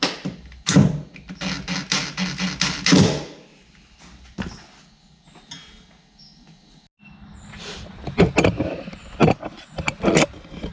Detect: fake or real real